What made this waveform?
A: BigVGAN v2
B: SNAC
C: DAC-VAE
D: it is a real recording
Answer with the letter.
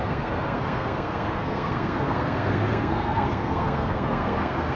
B